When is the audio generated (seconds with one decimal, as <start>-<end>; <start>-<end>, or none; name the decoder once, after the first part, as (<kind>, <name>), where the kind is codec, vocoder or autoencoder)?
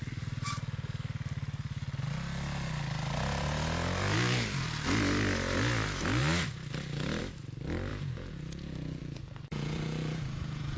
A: 7.9-10.8 (vocoder, Vocos)